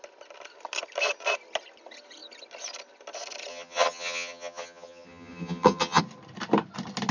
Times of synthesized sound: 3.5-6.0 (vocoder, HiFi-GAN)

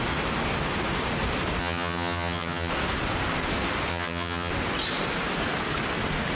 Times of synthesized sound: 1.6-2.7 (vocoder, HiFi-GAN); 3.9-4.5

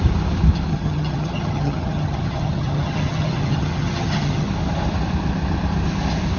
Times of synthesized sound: 0.7-4.5 (vocoder, HiFi-GAN)

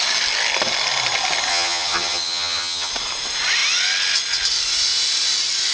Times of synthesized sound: 1.5-2.9 (vocoder, HiFi-GAN)

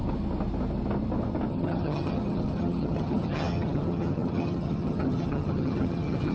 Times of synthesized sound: 1.5-6.3 (vocoder, HiFi-GAN)

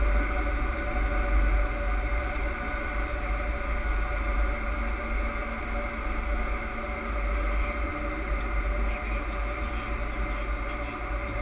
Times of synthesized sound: none